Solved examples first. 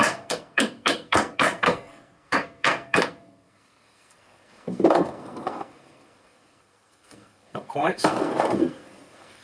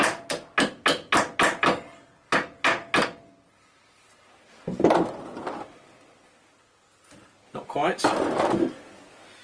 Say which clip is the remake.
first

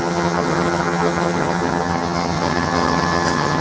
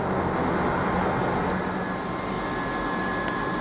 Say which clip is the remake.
first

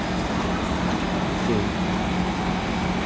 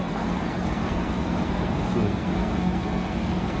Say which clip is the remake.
second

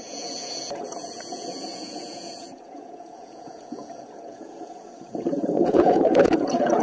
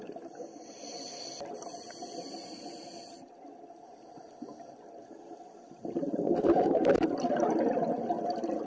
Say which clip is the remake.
first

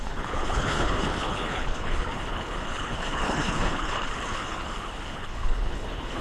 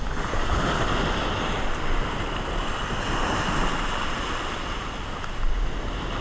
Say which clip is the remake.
first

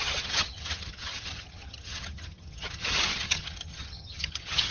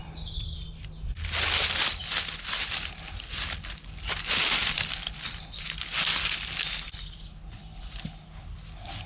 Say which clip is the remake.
first